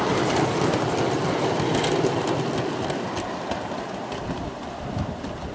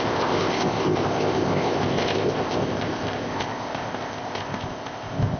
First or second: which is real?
first